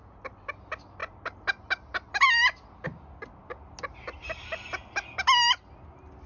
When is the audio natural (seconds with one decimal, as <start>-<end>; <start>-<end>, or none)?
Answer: 0.0-6.3